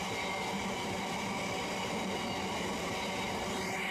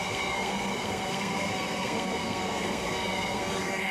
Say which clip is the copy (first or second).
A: second